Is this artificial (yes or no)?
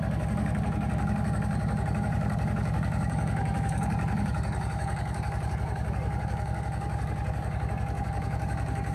yes